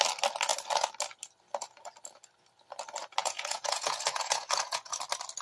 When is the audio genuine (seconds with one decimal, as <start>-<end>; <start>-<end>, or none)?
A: 0.0-3.2; 5.0-5.4